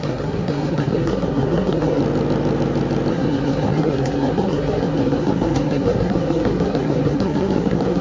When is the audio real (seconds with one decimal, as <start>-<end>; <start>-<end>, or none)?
2.0-3.1